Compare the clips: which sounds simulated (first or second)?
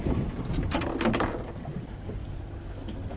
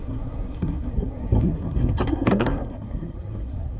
second